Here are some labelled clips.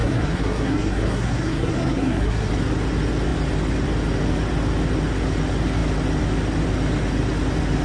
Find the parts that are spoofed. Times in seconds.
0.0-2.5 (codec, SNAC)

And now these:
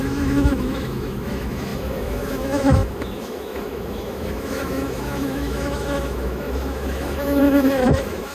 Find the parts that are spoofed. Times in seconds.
0.0-8.3 (autoencoder, DAC-VAE)

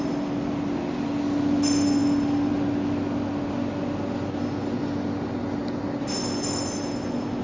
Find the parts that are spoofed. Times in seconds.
none